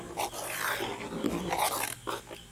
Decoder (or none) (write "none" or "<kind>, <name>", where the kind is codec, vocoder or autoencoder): none